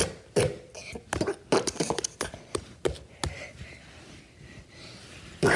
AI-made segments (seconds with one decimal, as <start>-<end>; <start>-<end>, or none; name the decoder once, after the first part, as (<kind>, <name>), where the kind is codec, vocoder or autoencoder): none